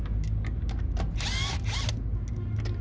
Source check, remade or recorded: recorded